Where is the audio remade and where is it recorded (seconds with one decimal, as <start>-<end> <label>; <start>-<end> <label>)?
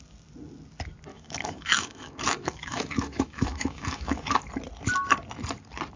0.0-1.1 recorded; 1.1-4.3 remade; 4.3-6.0 recorded